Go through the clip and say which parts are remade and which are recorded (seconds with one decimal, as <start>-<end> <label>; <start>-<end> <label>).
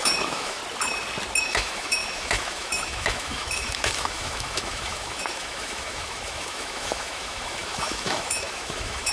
0.0-0.6 remade; 0.6-1.4 recorded; 1.4-9.1 remade